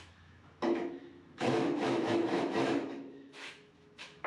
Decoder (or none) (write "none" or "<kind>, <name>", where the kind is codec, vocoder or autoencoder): autoencoder, DAC-VAE